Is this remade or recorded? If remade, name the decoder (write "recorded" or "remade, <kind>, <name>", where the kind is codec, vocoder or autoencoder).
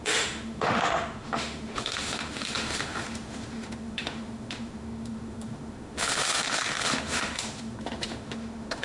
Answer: remade, autoencoder, DAC-VAE